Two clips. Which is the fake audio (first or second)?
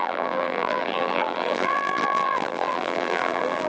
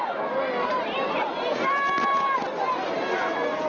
first